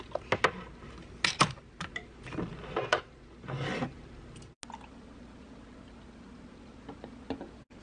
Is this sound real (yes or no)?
yes